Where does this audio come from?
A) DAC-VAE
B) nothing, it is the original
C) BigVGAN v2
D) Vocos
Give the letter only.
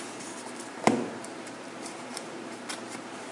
C